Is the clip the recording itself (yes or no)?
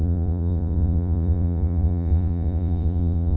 no